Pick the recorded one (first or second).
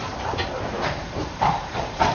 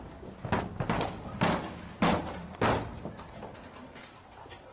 second